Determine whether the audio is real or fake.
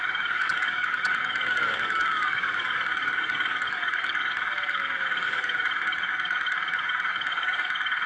fake